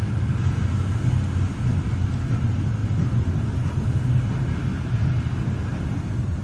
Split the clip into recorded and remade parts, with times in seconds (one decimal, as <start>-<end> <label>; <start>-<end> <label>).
0.0-6.4 recorded